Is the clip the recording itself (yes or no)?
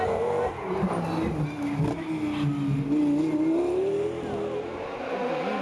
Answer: yes